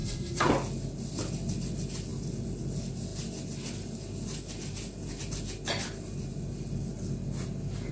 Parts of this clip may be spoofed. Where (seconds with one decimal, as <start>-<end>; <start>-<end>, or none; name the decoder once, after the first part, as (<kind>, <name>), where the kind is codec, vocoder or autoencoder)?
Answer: 0.0-0.5 (codec, SNAC)